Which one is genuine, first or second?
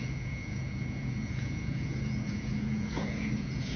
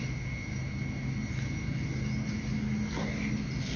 second